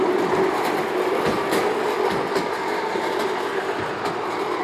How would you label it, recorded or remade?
recorded